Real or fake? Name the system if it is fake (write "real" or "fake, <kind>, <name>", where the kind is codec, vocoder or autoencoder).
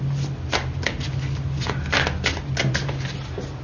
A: real